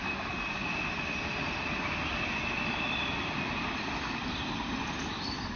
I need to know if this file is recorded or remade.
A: recorded